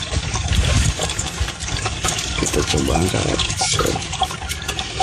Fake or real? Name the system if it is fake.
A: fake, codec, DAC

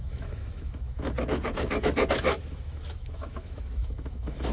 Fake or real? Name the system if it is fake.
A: fake, autoencoder, DAC-VAE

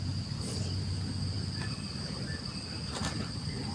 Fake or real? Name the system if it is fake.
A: real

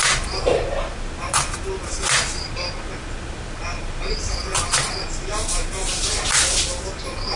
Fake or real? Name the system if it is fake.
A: real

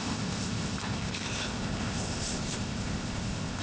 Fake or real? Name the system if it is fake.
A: fake, codec, ZipCodec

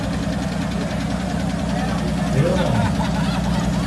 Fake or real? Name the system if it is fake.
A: real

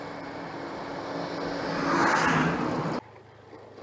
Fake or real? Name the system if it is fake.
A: real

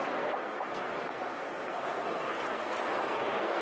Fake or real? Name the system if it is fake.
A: fake, codec, SNAC